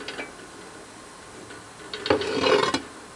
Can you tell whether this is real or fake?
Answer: real